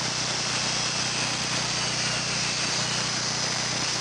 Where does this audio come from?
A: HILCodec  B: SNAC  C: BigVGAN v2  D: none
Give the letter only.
D